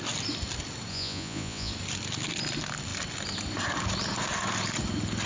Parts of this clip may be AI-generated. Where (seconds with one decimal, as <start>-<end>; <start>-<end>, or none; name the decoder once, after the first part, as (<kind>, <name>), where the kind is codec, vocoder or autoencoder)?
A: 0.9-1.7 (vocoder, Vocos)